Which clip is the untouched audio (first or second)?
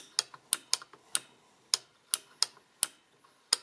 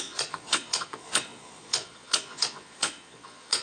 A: first